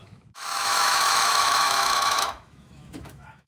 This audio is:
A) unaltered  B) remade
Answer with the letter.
B